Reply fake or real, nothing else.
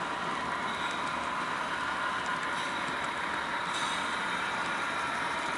real